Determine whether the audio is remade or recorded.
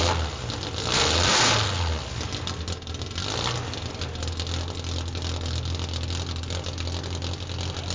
recorded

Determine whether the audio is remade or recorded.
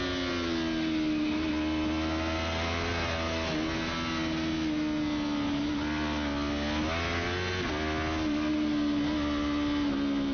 recorded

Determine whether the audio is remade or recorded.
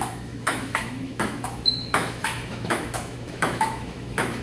remade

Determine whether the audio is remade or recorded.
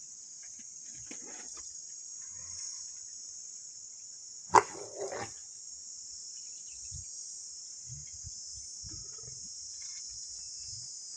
recorded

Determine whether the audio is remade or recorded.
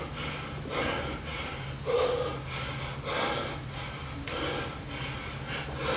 recorded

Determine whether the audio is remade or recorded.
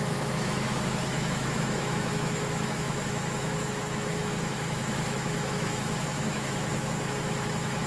remade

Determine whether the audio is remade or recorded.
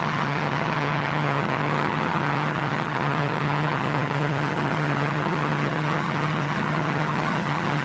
remade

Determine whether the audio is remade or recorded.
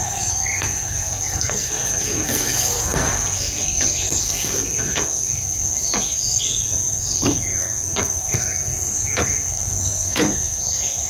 remade